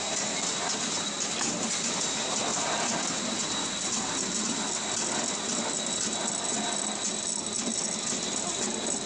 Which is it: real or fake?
real